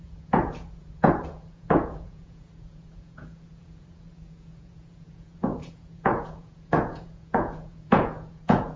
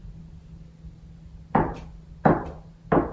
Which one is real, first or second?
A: second